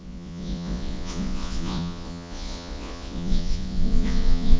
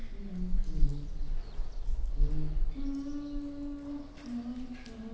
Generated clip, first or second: first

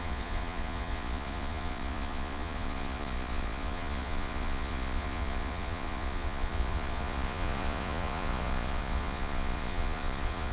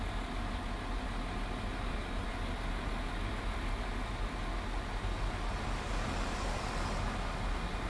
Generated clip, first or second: first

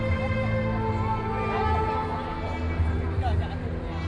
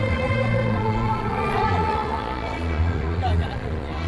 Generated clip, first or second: second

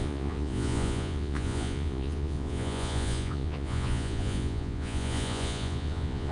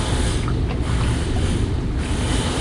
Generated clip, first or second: first